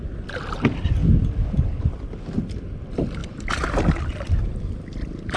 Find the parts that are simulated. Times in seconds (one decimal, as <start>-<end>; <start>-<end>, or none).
none